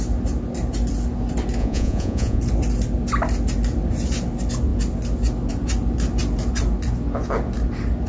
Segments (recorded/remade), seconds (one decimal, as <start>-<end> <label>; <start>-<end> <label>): 0.0-1.6 recorded; 1.6-2.4 remade; 2.4-8.1 recorded